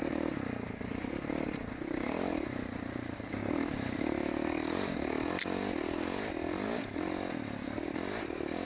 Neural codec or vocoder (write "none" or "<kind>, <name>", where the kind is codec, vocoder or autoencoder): none